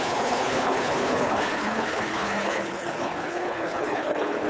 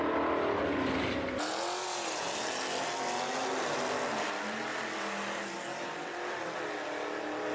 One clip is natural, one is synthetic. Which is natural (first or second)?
second